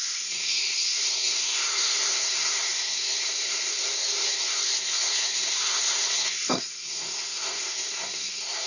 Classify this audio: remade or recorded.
remade